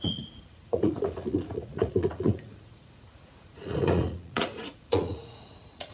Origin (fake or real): fake